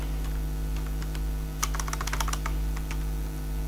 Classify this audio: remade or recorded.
recorded